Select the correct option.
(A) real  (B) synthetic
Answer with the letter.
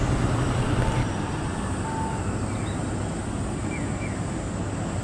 A